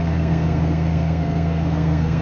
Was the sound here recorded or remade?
remade